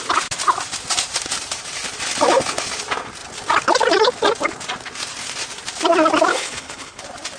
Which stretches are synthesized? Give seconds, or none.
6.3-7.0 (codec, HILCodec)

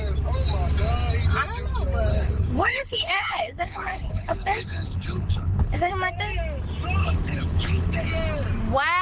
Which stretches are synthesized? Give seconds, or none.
2.1-5.9 (codec, HILCodec); 7.0-8.1

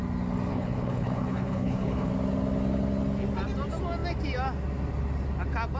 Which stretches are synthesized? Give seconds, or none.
0.5-2.1 (codec, HILCodec)